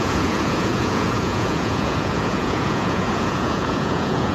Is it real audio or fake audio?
fake